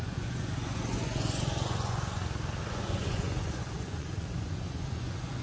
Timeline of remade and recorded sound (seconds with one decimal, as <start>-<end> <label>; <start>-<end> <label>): 0.0-2.2 remade; 2.2-2.7 recorded; 2.7-5.4 remade